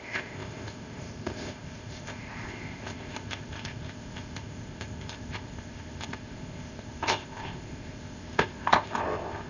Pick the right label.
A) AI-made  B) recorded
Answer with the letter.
A